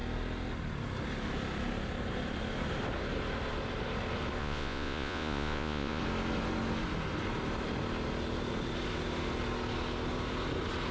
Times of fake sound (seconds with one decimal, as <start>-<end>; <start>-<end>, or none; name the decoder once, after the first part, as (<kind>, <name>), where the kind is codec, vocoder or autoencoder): 4.4-6.0 (vocoder, Vocos)

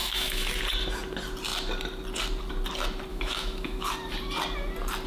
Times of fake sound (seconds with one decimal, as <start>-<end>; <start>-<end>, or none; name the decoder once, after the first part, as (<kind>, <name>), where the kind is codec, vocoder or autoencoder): 0.0-0.6 (autoencoder, DAC-VAE); 3.1-3.9